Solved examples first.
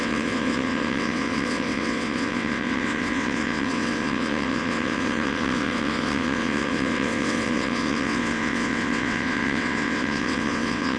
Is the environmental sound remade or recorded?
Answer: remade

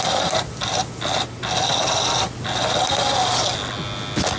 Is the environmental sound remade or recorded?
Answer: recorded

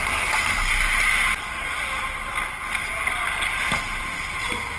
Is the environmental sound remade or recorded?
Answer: recorded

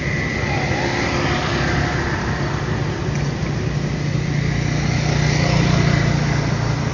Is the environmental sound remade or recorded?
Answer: recorded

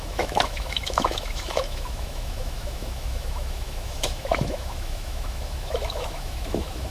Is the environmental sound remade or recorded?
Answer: remade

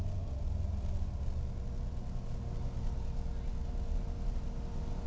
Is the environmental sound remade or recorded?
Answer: recorded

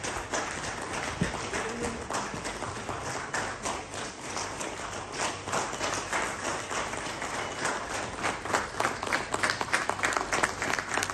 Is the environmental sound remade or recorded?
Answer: recorded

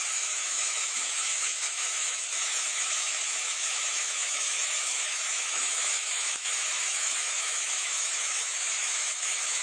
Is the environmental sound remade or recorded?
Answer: remade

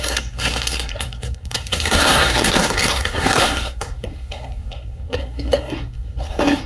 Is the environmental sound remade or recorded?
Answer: remade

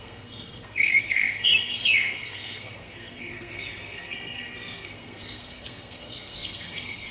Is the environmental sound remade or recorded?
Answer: remade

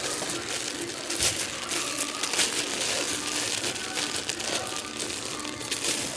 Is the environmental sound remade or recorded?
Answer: recorded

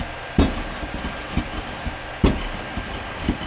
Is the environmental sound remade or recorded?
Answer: recorded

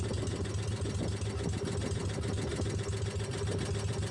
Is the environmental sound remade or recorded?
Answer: recorded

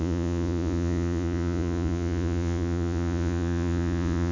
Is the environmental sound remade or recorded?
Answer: remade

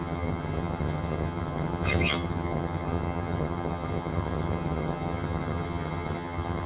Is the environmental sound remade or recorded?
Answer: remade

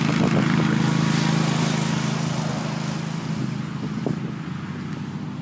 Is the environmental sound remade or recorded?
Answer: recorded